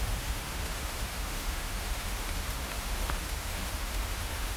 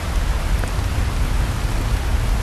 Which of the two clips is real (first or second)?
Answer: second